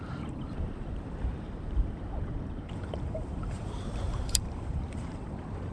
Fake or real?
fake